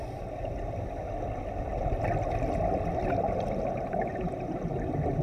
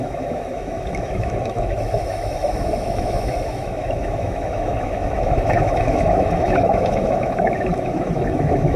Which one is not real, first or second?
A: second